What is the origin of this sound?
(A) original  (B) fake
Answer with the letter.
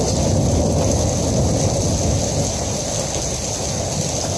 A